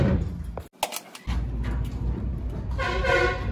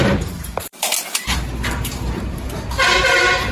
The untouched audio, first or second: first